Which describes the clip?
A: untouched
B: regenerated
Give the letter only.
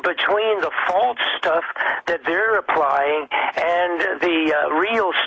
A